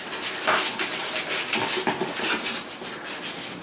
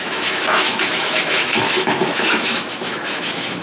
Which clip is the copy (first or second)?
second